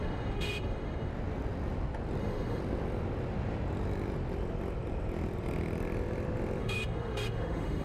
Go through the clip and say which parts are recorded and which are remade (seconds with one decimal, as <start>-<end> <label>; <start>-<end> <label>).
0.0-1.1 remade; 1.1-2.2 recorded; 2.2-2.6 remade; 2.6-6.6 recorded; 6.6-7.8 remade